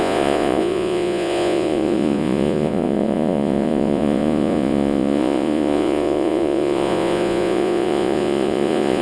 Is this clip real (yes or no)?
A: no